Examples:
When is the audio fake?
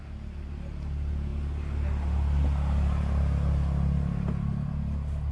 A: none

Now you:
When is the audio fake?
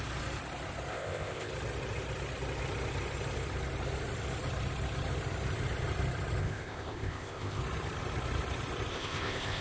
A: 0.9-1.5 (codec, ZipCodec); 6.4-7.6; 8.9-9.6